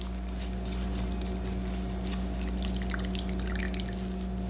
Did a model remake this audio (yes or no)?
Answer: no